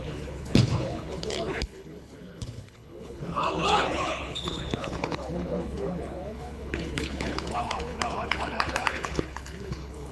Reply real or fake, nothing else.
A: fake